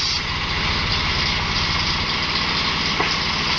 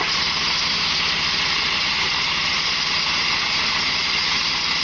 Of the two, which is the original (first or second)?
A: first